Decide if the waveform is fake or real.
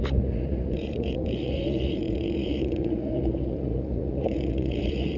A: fake